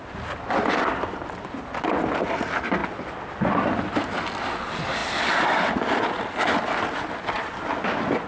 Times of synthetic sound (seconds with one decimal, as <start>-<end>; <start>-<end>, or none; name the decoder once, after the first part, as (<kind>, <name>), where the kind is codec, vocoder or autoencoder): none